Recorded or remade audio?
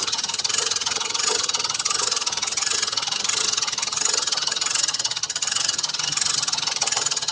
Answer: remade